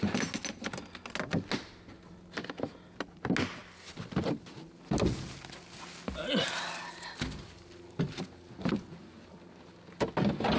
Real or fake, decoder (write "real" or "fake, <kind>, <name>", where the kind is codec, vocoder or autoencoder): real